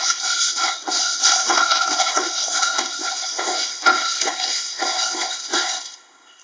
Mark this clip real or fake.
fake